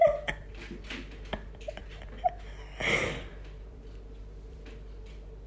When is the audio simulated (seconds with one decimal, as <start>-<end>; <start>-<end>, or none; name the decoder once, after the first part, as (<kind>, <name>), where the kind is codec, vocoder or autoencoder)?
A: 0.0-1.8 (vocoder, BigVGAN v2); 3.3-5.5